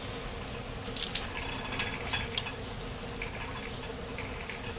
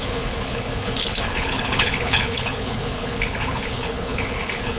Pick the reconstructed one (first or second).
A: second